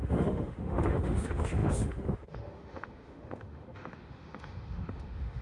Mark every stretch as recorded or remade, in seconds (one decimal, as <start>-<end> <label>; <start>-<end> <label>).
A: 0.0-5.4 remade